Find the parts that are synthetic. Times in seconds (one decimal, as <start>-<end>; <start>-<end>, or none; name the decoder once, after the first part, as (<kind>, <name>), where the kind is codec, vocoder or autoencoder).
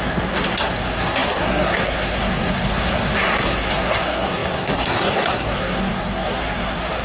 0.0-7.0 (codec, SNAC)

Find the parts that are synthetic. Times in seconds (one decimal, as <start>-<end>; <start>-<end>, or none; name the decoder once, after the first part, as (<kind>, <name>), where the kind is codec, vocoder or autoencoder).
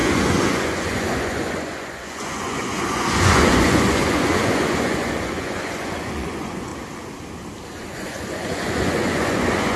0.0-6.7 (vocoder, Vocos); 7.7-9.8